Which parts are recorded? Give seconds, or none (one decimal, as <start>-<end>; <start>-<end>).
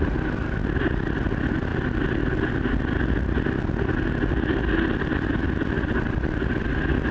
0.0-7.1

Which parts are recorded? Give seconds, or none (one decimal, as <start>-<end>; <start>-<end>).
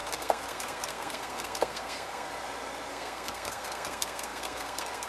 2.3-2.9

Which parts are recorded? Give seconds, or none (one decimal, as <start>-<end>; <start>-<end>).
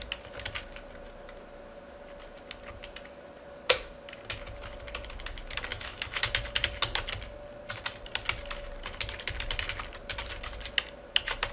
0.0-5.7; 6.2-11.5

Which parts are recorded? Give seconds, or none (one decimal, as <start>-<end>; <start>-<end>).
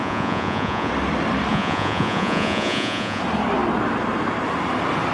0.9-1.5; 3.2-5.1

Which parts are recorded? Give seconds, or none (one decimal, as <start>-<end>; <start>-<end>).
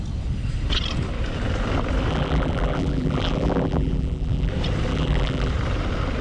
0.0-2.1; 4.5-4.9; 5.5-6.2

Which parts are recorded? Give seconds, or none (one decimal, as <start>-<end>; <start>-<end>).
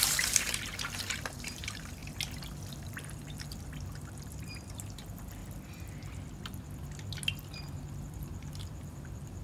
2.0-2.7; 5.4-8.0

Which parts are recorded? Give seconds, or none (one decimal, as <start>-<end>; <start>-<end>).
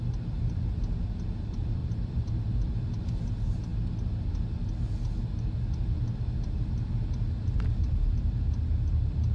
0.0-1.8; 2.7-9.3